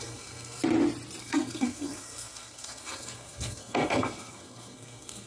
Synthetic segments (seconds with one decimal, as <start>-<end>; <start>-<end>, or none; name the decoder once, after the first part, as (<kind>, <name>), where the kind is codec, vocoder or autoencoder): 0.0-0.6 (codec, SNAC); 1.2-5.3